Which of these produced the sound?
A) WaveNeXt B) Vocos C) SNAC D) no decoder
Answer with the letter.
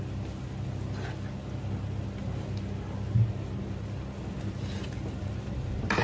D